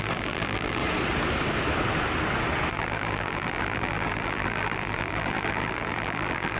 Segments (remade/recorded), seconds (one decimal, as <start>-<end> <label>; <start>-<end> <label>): 0.0-0.8 remade; 0.8-2.7 recorded; 2.7-6.6 remade